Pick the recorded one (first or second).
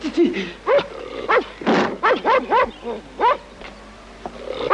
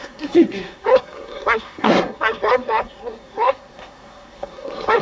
first